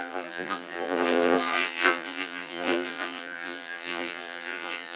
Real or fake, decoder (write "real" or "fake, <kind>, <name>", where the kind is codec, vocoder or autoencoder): fake, vocoder, BigVGAN v2